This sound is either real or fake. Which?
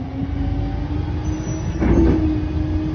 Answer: real